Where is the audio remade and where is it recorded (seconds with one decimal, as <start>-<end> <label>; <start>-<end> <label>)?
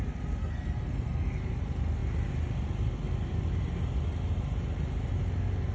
0.0-0.4 recorded; 0.4-1.4 remade; 1.4-5.7 recorded